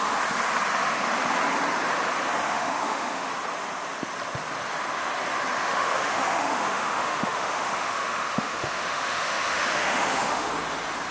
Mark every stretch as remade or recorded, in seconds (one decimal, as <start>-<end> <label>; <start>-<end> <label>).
0.0-2.5 recorded; 2.5-3.3 remade; 3.3-5.6 recorded; 5.6-10.5 remade; 10.5-11.1 recorded